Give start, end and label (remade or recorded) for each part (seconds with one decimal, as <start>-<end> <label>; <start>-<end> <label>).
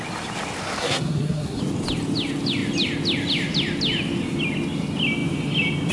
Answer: 0.0-0.8 recorded; 0.8-1.6 remade; 1.6-5.9 recorded